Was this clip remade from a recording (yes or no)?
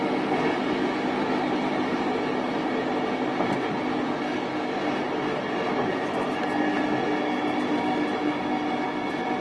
no